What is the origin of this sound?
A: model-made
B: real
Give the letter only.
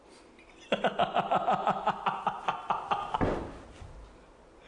B